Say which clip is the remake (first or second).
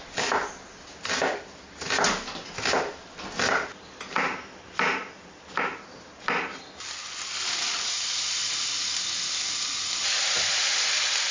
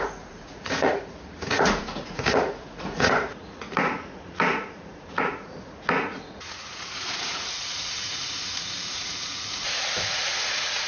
second